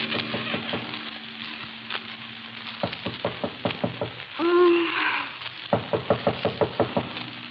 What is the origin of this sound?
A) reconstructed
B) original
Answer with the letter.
B